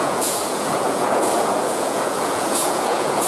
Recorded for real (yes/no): no